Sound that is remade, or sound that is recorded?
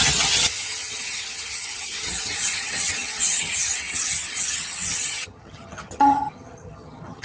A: remade